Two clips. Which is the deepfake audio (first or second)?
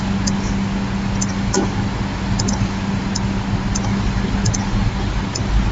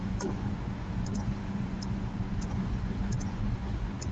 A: second